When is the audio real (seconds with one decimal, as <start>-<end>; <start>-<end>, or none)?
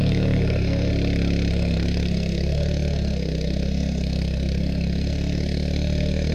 0.9-1.5